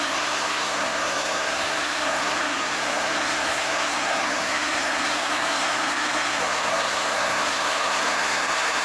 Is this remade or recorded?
remade